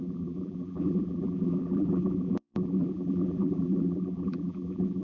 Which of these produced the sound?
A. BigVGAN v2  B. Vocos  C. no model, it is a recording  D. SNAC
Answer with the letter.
A